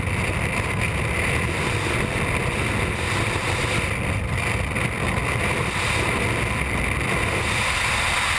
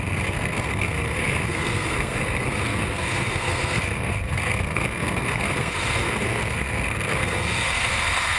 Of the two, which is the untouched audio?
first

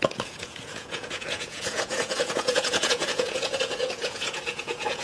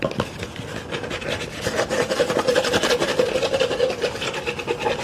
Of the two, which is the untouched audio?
second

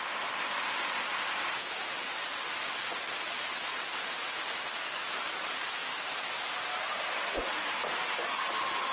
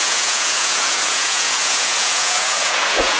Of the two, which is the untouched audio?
first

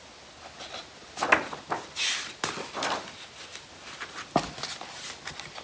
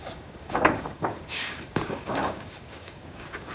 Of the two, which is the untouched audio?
first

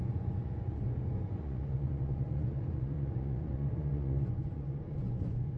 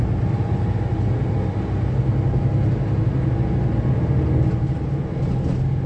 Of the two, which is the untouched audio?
second